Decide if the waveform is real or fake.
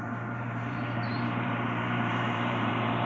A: fake